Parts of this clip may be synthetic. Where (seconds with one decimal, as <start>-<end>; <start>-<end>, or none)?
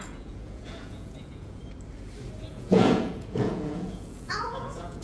0.0-1.6; 2.5-5.0